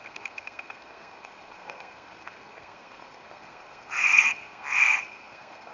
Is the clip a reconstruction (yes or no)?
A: yes